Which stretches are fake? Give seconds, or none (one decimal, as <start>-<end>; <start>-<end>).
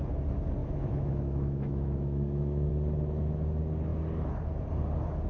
0.6-2.7